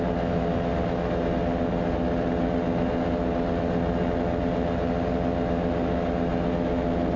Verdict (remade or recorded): recorded